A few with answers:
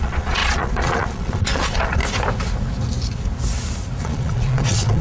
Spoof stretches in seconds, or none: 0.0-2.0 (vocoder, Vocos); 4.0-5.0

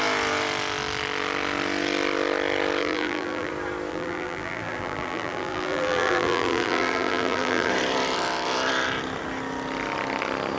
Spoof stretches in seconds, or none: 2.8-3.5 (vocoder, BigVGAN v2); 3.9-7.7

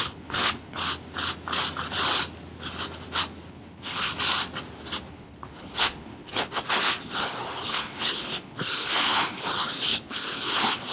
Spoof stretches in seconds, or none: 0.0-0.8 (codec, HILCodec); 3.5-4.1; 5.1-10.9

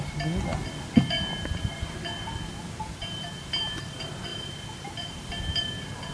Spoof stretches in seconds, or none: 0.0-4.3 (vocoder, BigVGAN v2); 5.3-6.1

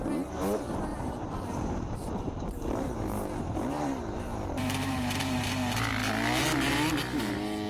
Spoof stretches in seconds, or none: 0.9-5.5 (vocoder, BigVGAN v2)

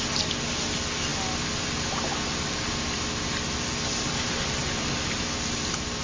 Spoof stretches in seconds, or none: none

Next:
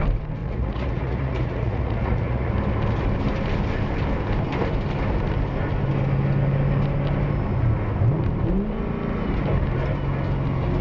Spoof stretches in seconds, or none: 0.4-2.5 (vocoder, Vocos)